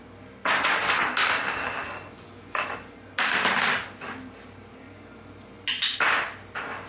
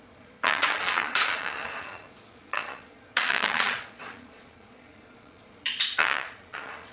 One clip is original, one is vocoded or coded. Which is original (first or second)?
first